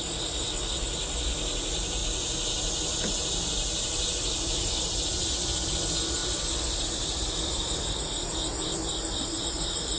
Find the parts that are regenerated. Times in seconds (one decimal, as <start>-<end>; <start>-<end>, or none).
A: none